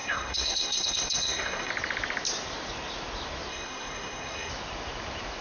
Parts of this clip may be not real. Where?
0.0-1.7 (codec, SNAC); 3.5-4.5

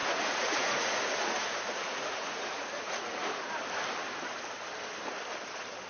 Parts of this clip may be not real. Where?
0.0-3.5 (vocoder, Vocos)

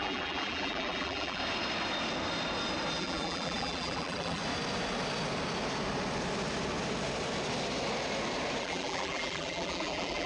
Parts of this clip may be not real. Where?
0.0-1.4 (vocoder, BigVGAN v2); 3.0-4.4; 8.6-10.3